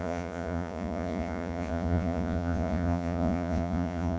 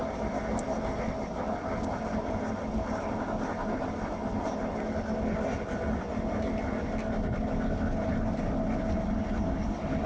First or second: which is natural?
second